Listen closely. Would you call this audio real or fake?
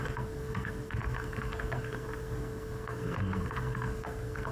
fake